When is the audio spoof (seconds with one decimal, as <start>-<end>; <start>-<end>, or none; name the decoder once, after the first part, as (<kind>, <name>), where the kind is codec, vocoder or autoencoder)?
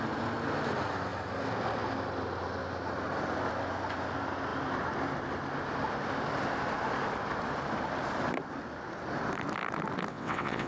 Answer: 10.1-10.7 (vocoder, WaveNeXt)